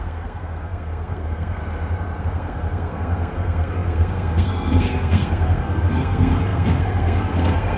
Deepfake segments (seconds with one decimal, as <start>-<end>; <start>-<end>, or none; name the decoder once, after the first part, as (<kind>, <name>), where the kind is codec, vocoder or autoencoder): 0.0-1.6 (codec, SNAC); 2.2-7.8